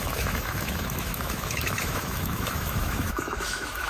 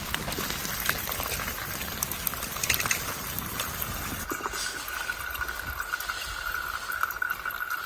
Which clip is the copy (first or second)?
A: first